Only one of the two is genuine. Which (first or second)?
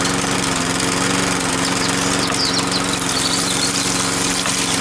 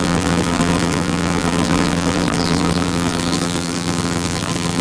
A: first